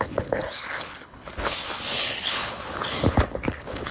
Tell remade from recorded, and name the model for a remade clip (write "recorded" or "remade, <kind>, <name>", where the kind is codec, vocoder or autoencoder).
remade, codec, HILCodec